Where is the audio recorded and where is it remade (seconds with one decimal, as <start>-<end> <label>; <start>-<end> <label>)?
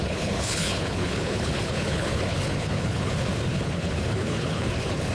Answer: 0.0-3.1 remade; 3.1-3.5 recorded; 3.5-5.1 remade